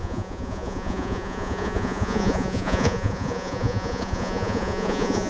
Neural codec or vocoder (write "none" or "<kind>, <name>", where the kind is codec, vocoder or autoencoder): vocoder, Vocos